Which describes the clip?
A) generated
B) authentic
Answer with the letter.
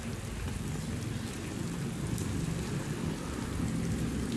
B